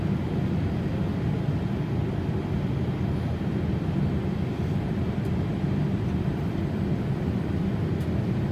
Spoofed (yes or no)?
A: no